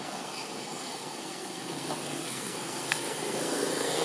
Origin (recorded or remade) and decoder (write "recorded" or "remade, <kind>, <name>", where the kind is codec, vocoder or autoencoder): remade, codec, SNAC